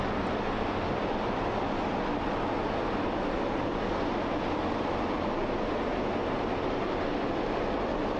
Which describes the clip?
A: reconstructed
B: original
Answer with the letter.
B